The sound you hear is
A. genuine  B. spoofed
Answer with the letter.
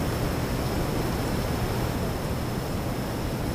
A